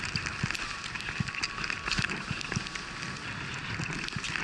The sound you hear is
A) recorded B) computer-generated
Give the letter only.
A